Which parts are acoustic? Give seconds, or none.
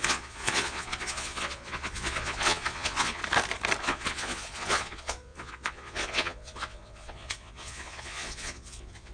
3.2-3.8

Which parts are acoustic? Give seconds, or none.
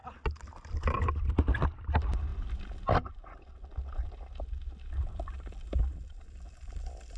0.0-7.2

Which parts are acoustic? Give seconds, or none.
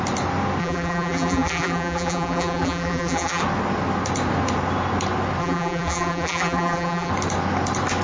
0.0-0.6; 3.4-5.4; 7.1-8.0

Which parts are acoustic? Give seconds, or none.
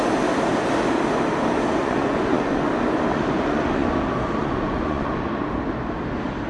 0.0-1.8; 2.7-3.1; 3.9-4.4; 5.1-6.5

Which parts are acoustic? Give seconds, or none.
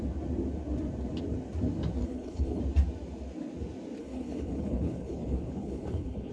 0.0-2.0; 2.6-4.0